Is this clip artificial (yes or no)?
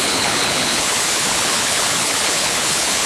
yes